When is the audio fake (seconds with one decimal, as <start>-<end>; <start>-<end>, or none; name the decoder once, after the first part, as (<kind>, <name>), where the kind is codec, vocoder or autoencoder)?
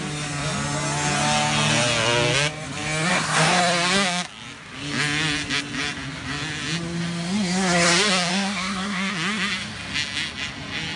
3.1-3.6 (codec, SNAC); 8.3-9.1